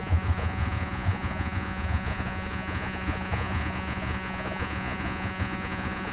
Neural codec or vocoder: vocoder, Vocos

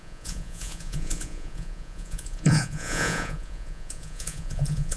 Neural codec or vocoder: vocoder, Vocos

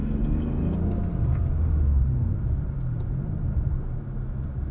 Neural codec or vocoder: none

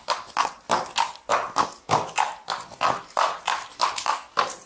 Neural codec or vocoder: none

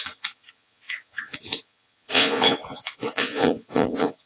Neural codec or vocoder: vocoder, Vocos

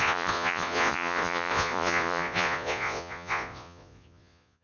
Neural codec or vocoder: vocoder, Vocos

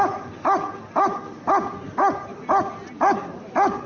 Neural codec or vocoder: none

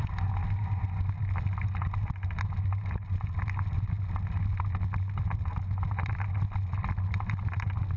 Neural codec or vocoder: none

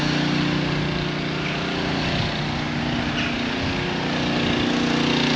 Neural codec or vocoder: none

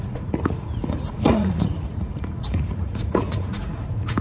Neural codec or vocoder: vocoder, Vocos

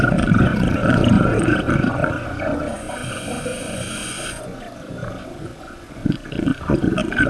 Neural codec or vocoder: vocoder, Vocos